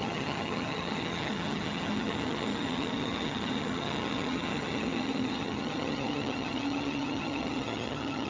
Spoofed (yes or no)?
yes